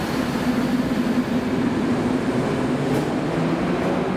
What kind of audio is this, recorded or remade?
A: recorded